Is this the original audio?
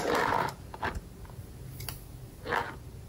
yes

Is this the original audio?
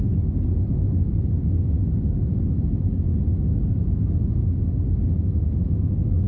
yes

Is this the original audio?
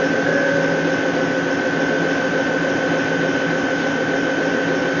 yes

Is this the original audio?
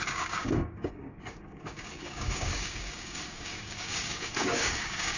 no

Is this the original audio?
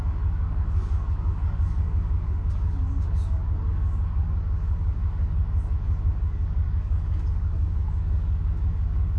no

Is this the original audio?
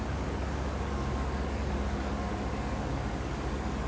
no